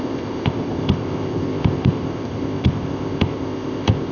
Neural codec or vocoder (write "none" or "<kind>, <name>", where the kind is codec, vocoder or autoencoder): codec, ZipCodec